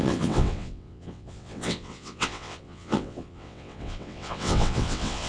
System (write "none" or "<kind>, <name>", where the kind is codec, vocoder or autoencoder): vocoder, WaveNeXt